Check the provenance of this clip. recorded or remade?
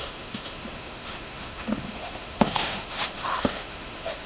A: remade